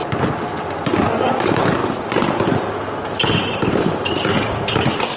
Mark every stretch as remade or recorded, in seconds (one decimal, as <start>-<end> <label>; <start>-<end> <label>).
0.0-1.3 recorded; 1.3-1.8 remade; 1.8-5.2 recorded